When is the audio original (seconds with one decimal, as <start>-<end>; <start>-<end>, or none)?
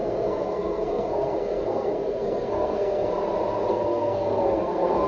3.1-3.7